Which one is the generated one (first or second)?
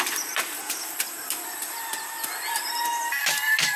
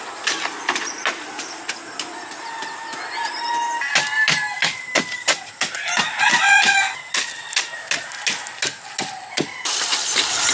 first